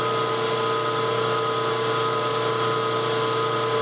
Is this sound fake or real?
real